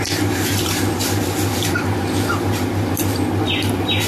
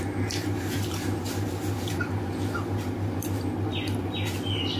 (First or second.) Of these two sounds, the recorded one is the second